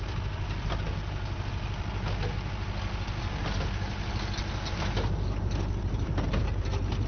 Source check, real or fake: real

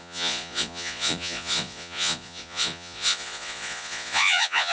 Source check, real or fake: fake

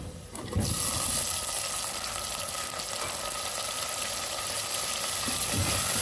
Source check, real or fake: real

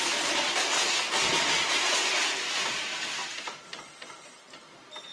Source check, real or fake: real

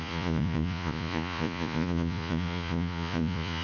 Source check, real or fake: fake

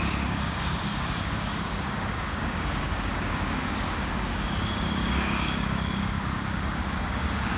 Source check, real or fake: fake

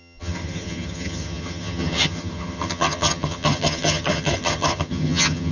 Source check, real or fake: fake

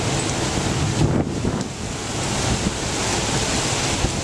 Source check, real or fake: real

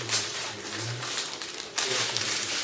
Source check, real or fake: fake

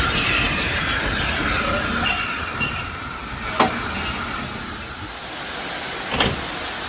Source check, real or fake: real